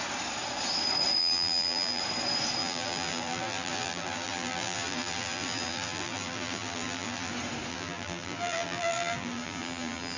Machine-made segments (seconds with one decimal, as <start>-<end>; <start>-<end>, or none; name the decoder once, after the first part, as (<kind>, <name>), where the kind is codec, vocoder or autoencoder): 1.2-2.0 (vocoder, BigVGAN v2); 2.6-7.3; 7.7-10.2